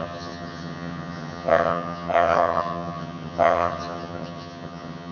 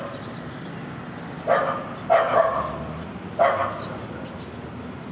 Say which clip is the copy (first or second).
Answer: first